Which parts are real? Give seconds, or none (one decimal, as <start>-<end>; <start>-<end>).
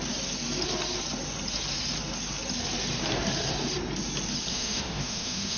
0.0-4.5